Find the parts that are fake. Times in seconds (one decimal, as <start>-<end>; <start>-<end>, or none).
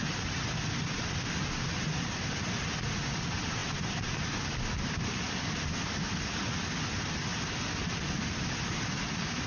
none